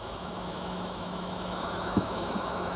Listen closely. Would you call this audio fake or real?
fake